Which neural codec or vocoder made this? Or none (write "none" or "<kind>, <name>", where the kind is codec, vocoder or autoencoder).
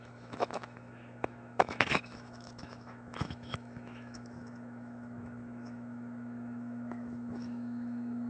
autoencoder, DAC-VAE